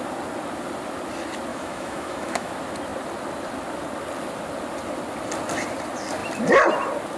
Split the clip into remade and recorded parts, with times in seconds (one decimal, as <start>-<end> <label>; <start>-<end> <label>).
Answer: 0.0-1.5 recorded; 1.5-2.5 remade; 2.5-7.2 recorded